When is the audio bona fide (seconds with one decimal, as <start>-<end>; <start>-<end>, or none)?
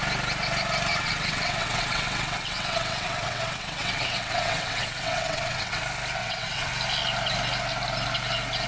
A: 0.0-0.9; 5.8-6.2; 6.7-8.7